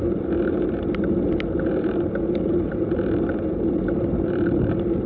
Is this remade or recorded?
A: recorded